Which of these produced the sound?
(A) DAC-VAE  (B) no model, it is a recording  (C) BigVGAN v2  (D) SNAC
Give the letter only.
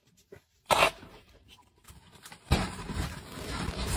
C